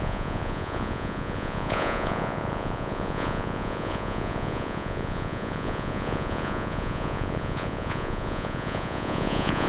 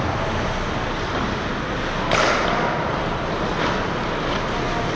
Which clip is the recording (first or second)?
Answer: second